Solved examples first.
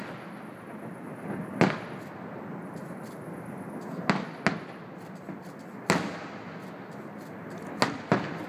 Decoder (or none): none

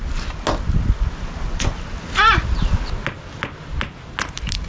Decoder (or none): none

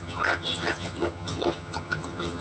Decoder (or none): vocoder, HiFi-GAN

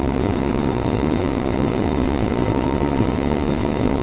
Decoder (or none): vocoder, WaveNeXt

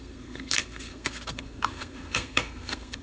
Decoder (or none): codec, SNAC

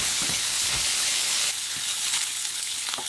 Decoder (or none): codec, HILCodec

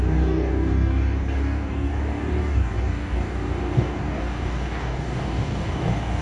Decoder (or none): codec, DAC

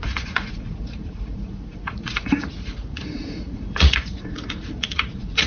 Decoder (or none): vocoder, Vocos